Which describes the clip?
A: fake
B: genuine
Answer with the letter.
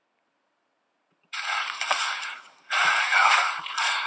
A